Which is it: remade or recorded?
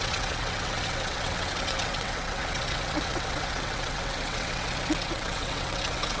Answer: remade